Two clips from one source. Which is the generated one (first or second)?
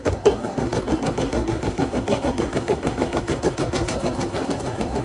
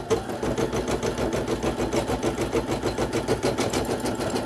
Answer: first